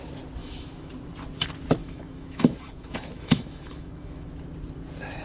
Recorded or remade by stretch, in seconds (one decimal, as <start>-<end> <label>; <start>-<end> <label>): 0.0-0.4 recorded; 0.4-0.9 remade; 0.9-1.8 recorded; 1.8-4.3 remade; 4.3-5.2 recorded